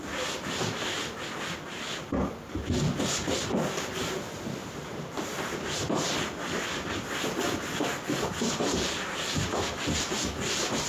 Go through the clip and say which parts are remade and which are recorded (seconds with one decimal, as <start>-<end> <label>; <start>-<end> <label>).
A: 0.0-4.6 recorded; 4.6-5.8 remade; 5.8-10.9 recorded